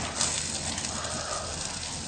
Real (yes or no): yes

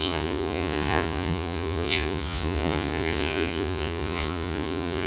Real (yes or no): no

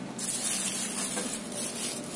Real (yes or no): yes